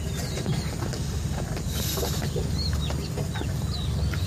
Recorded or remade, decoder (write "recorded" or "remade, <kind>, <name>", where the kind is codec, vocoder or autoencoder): recorded